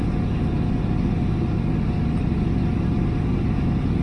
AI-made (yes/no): no